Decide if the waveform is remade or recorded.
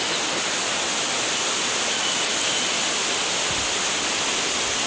recorded